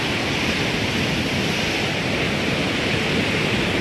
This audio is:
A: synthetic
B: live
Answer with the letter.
B